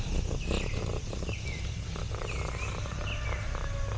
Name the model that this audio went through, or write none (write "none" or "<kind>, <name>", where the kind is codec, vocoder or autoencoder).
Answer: none